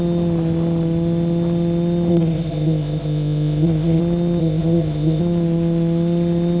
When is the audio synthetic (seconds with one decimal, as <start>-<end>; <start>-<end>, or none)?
2.1-4.0; 4.4-5.2